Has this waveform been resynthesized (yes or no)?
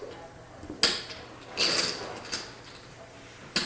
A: no